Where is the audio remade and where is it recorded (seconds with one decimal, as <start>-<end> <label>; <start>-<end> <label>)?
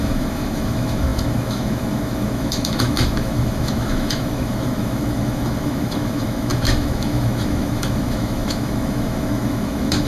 0.0-10.1 remade